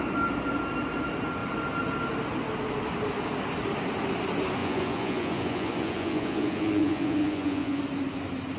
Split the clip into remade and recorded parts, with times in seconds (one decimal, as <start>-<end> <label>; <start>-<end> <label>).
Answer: 0.0-4.6 recorded; 4.6-7.8 remade; 7.8-8.6 recorded